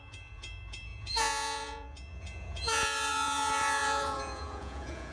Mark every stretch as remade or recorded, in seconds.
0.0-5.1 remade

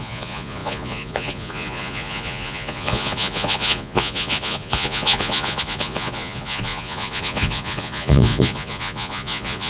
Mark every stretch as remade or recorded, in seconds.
0.0-9.7 remade

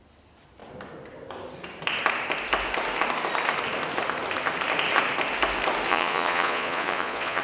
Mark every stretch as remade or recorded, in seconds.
0.0-5.9 recorded; 5.9-7.4 remade